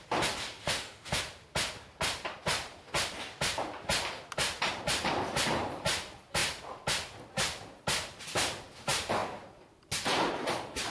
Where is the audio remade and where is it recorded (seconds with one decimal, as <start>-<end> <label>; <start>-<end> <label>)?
0.0-0.6 recorded; 0.6-1.2 remade; 1.2-10.9 recorded